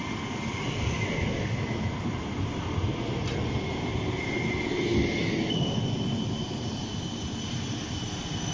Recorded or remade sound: recorded